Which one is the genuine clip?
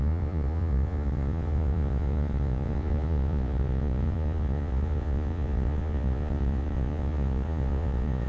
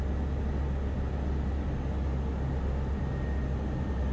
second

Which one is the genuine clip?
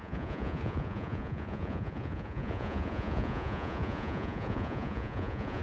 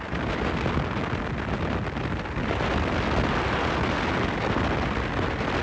second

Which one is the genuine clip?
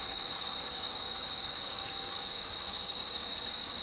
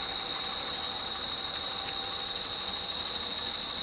second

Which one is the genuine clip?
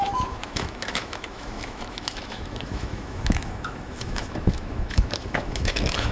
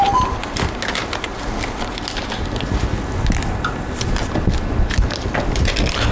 second